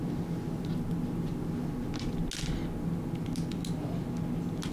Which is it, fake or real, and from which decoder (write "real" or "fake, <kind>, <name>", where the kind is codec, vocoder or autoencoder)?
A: real